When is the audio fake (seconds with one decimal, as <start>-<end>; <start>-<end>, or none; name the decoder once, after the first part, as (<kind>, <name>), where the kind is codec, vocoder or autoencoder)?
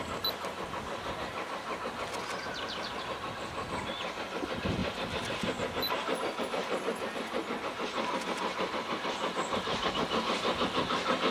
none